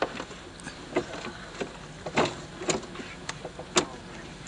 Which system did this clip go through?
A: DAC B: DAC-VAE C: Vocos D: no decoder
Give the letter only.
D